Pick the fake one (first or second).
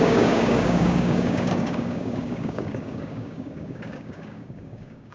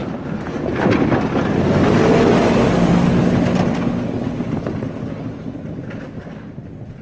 first